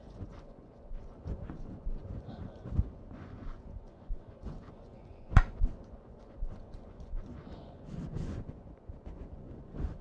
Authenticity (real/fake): fake